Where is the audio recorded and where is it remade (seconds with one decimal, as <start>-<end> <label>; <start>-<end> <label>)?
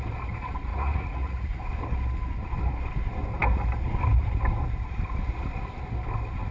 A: 0.0-0.7 recorded; 0.7-1.6 remade; 1.6-6.5 recorded